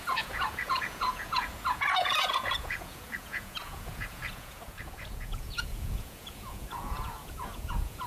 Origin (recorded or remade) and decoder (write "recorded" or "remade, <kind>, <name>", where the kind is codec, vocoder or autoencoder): remade, vocoder, Vocos